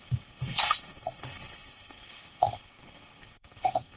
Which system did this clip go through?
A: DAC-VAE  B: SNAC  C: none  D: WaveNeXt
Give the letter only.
B